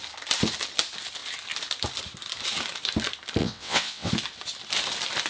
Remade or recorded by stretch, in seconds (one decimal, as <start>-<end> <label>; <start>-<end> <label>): 0.0-3.4 recorded; 3.4-4.1 remade; 4.1-5.3 recorded